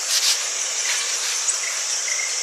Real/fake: real